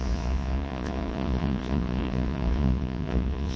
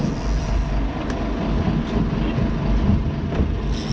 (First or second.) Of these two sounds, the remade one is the first